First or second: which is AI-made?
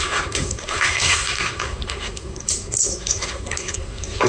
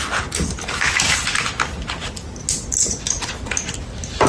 first